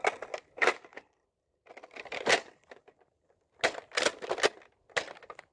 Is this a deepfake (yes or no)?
no